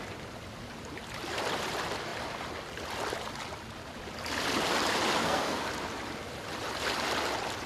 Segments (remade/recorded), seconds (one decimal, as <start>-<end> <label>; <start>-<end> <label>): 0.0-5.2 recorded; 5.2-5.7 remade; 5.7-7.7 recorded